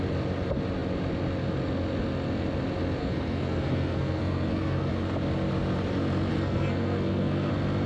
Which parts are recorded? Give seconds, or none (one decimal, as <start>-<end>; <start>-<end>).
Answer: 0.0-3.0; 4.9-6.3; 7.5-7.9